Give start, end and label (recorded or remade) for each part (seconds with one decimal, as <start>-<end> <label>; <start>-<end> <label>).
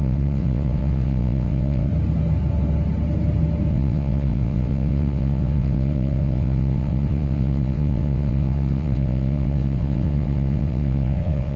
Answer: 0.0-1.9 remade; 1.9-3.7 recorded; 3.7-11.6 remade